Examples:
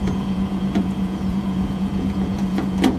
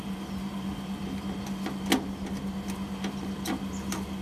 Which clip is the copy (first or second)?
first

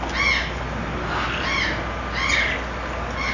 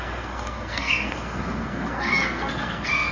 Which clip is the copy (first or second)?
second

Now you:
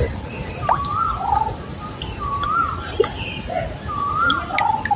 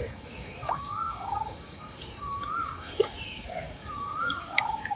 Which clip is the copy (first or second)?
second